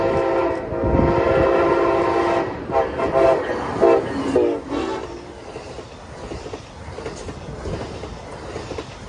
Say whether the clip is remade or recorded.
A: recorded